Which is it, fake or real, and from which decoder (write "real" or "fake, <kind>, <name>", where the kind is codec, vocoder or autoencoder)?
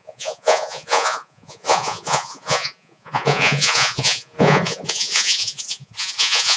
fake, vocoder, Vocos